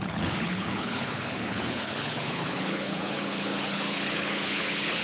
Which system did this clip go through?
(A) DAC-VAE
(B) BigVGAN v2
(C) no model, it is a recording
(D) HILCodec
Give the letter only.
D